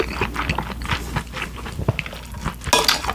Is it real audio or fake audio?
real